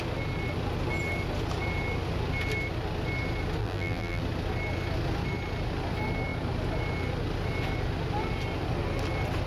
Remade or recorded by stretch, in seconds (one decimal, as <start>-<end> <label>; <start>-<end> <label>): 0.0-3.6 recorded; 3.6-4.2 remade; 4.2-9.5 recorded